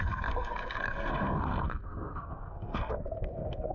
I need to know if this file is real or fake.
fake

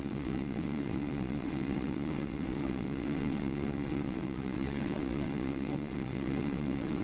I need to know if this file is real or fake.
fake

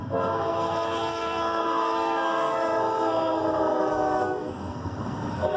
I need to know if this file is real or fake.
fake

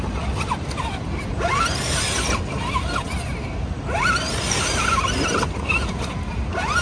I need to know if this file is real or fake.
real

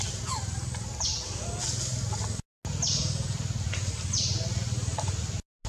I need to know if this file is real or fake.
real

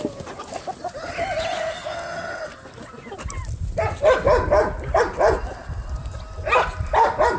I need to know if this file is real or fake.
real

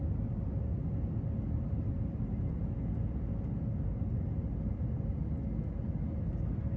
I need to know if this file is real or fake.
real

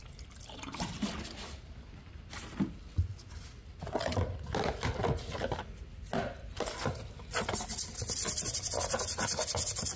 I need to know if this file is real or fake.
real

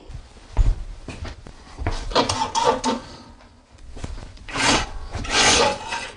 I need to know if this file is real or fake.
fake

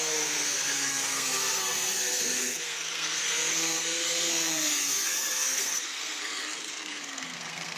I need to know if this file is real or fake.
fake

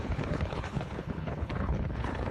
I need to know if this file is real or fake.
fake